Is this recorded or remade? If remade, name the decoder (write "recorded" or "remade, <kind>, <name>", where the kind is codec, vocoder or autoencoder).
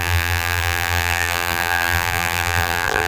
remade, vocoder, BigVGAN v2